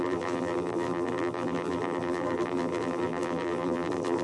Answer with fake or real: fake